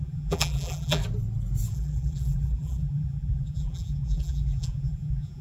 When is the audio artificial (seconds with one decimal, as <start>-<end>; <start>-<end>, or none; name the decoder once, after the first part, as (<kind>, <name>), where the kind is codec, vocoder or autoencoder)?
0.0-1.0 (vocoder, BigVGAN v2); 1.7-5.4